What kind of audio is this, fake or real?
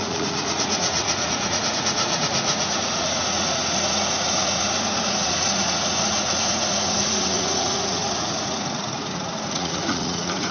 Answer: fake